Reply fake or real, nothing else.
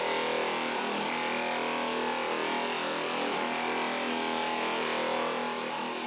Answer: real